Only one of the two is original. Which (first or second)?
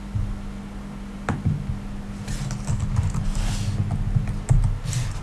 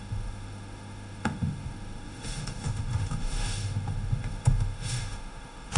first